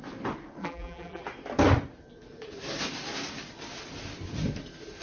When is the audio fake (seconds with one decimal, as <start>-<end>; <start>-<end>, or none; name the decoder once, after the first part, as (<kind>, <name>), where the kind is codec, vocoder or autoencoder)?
0.6-1.2 (vocoder, BigVGAN v2)